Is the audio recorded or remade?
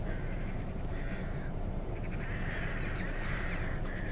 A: remade